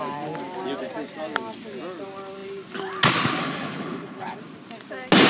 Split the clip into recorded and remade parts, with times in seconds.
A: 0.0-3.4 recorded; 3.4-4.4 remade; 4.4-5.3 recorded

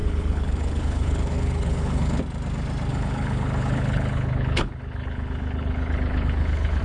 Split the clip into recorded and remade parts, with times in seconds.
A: 0.0-2.2 remade; 2.2-2.9 recorded; 2.9-6.8 remade

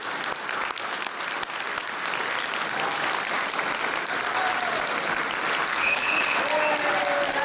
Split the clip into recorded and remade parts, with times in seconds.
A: 0.0-5.7 recorded; 5.7-6.4 remade; 6.4-7.4 recorded